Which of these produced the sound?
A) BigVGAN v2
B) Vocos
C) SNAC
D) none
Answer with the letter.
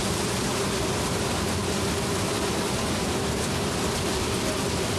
D